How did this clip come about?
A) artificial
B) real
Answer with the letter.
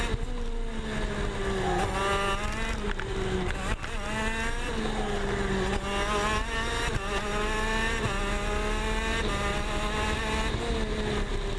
B